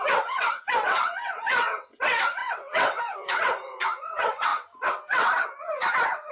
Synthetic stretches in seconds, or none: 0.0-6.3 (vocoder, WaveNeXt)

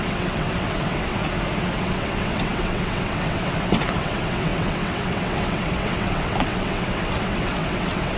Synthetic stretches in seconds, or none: 0.0-1.2 (vocoder, WaveNeXt); 1.8-8.2

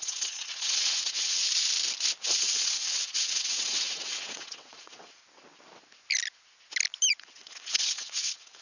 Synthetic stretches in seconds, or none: 0.0-1.4 (vocoder, WaveNeXt); 2.2-5.2; 7.2-8.6